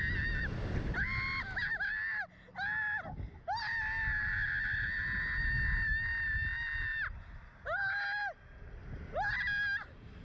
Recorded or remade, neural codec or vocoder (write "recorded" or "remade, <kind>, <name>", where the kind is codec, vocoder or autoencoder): recorded